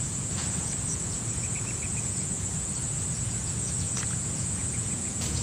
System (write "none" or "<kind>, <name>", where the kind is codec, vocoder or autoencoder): vocoder, Vocos